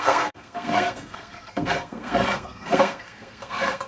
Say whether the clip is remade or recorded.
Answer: remade